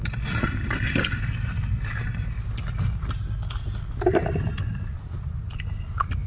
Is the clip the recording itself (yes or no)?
yes